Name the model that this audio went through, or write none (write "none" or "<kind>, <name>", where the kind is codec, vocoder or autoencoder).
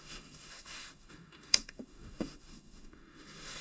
autoencoder, DAC-VAE